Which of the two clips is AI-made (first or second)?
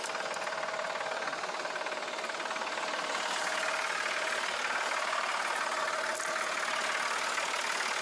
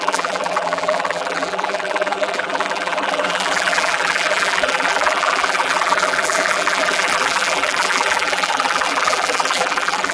second